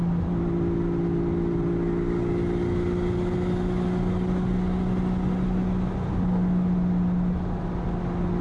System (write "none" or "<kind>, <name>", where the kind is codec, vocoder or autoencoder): none